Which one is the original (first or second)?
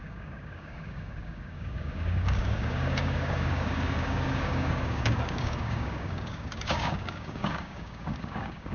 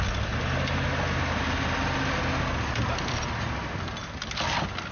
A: second